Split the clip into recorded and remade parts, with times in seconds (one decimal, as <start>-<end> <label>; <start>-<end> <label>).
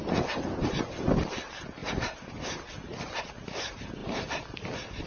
0.0-5.1 recorded